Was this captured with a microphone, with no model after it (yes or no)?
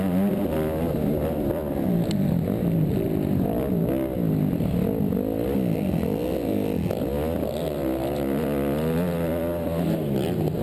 yes